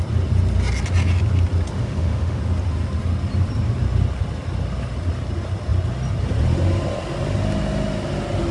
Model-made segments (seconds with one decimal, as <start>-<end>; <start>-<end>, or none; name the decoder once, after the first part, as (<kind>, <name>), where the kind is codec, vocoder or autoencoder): 1.8-2.4 (autoencoder, DAC-VAE)